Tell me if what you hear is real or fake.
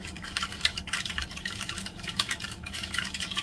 fake